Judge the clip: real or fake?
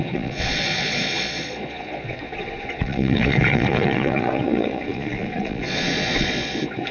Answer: fake